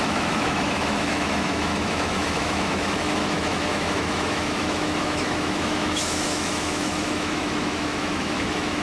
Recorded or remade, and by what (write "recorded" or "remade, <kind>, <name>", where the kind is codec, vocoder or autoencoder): remade, autoencoder, DAC-VAE